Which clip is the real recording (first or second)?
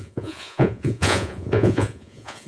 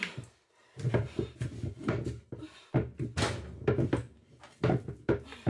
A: second